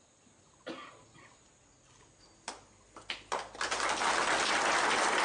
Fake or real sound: real